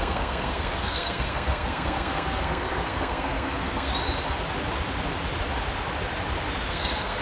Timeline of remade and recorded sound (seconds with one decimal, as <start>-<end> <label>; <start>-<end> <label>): 0.0-3.9 remade; 3.9-6.7 recorded; 6.7-7.2 remade